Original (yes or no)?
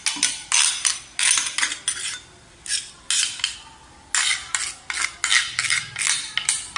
yes